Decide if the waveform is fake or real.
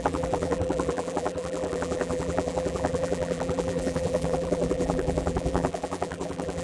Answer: fake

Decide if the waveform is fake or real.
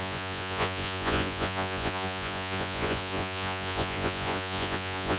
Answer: fake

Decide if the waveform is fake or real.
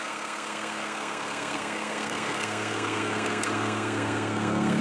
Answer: fake